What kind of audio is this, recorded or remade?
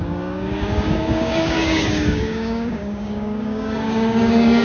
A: remade